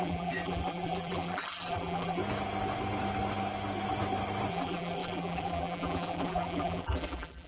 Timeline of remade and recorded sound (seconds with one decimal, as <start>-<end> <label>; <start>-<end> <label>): 0.0-2.2 remade; 2.2-4.5 recorded; 4.5-7.5 remade